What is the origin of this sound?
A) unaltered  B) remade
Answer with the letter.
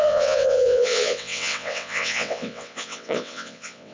B